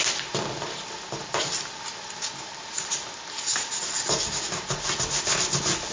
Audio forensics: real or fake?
real